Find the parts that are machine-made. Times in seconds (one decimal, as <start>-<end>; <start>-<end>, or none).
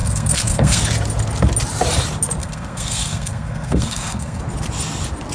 0.0-0.8; 2.4-4.4